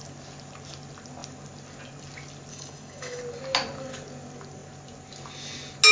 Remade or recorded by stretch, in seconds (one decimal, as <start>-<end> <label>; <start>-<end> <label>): 0.0-2.5 recorded; 2.5-3.2 remade; 3.2-5.9 recorded